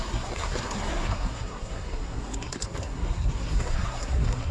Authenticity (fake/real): fake